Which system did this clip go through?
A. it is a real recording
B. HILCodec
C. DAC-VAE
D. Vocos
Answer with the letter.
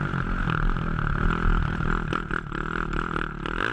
A